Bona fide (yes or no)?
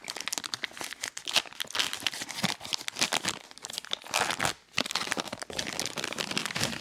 yes